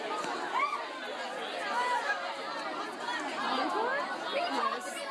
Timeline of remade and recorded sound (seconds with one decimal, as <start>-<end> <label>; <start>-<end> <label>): 0.0-5.1 recorded